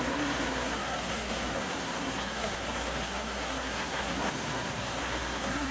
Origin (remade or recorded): remade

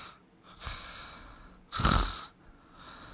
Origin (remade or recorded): recorded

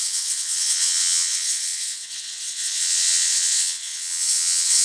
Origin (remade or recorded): remade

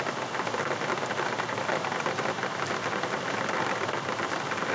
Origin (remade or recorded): recorded